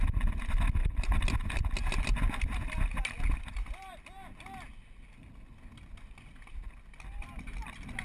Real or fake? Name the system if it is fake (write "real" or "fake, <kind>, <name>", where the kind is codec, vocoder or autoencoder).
real